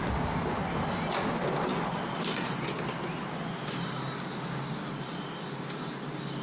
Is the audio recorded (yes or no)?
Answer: yes